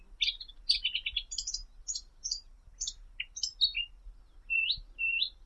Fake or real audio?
real